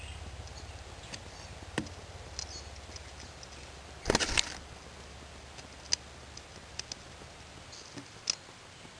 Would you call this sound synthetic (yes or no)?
no